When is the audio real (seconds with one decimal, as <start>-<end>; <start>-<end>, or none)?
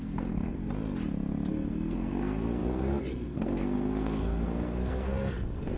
0.6-1.5